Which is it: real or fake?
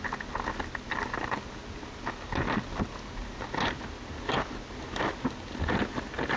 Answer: real